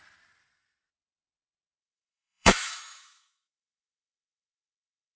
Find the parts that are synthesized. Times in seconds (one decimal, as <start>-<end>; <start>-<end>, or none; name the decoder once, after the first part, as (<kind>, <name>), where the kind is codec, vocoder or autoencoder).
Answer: 1.8-5.2 (autoencoder, DAC-VAE)